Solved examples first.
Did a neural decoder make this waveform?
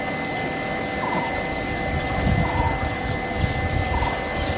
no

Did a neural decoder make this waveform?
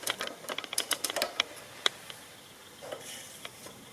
no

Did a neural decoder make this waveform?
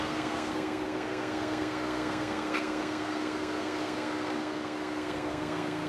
yes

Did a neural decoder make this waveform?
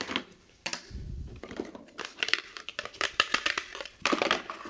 yes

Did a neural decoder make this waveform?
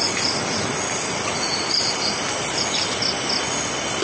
no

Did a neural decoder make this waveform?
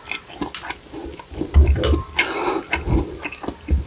no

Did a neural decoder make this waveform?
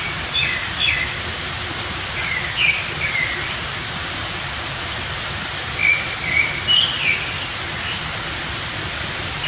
no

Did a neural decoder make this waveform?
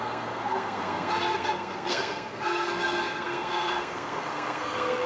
yes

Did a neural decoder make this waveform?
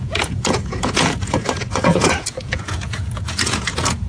yes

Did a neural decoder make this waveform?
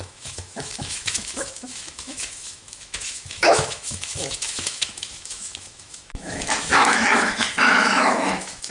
yes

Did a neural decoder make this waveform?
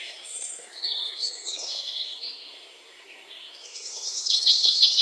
yes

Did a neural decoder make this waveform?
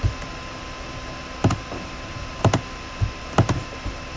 no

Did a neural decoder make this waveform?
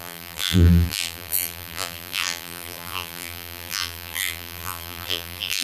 yes